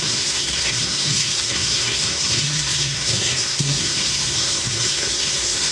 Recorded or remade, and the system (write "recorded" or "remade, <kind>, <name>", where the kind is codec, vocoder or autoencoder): remade, codec, SNAC